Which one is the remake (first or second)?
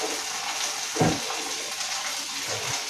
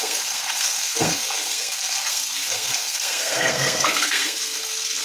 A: second